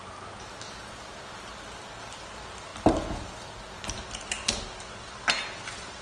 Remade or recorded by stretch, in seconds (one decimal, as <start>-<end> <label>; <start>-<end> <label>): 0.0-6.0 recorded